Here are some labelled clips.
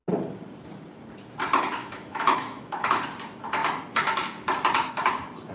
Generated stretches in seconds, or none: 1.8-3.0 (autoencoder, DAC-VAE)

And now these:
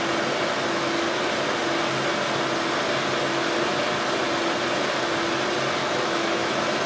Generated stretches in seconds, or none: 5.8-6.5 (autoencoder, DAC-VAE)

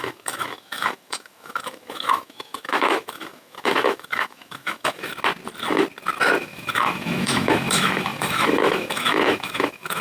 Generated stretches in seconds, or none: 0.0-5.1 (autoencoder, DAC-VAE); 6.4-10.0

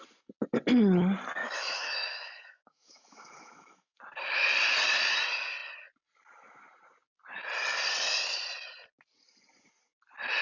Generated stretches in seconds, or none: 1.4-4.0 (autoencoder, DAC-VAE)